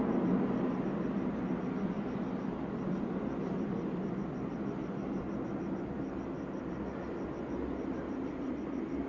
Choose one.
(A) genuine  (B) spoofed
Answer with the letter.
A